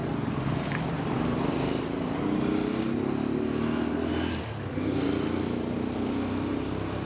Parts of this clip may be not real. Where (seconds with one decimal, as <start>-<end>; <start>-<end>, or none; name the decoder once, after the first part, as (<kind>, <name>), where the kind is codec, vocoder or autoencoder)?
none